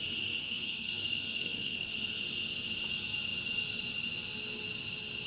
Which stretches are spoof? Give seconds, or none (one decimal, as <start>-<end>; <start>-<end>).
0.4-1.9